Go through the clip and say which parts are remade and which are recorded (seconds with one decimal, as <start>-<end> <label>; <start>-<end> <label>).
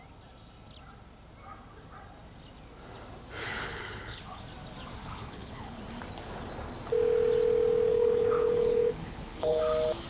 0.0-3.4 recorded; 3.4-4.4 remade; 4.4-5.0 recorded; 5.0-5.8 remade; 5.8-7.9 recorded; 7.9-9.6 remade; 9.6-10.1 recorded